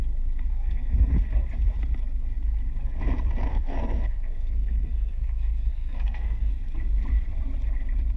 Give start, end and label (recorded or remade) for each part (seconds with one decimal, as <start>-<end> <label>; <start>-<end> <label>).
0.0-0.5 recorded; 0.5-1.1 remade; 1.1-3.5 recorded; 3.5-6.5 remade; 6.5-8.2 recorded